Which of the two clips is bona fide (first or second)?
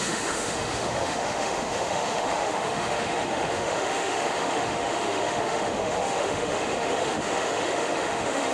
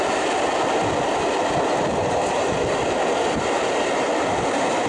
second